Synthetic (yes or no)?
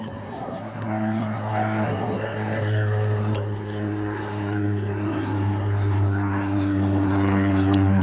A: yes